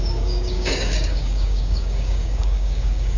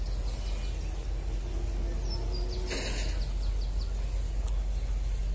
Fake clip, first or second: first